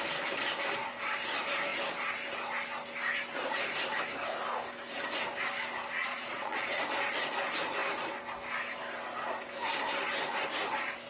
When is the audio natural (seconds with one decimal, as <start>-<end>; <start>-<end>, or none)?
0.0-6.0; 6.8-11.1